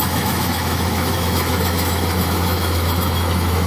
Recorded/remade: remade